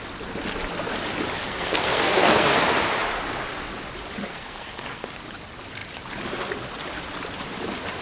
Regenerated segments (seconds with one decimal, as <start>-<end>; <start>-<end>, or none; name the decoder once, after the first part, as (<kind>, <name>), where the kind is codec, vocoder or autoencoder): 1.4-2.6 (codec, SNAC); 4.3-5.2